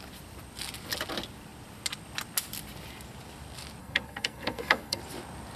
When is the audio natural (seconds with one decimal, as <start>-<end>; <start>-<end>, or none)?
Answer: 0.0-3.8; 5.0-5.6